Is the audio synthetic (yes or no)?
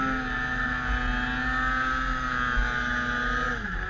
no